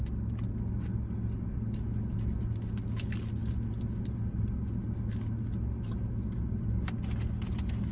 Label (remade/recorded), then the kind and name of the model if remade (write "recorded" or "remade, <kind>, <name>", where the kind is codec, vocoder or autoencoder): recorded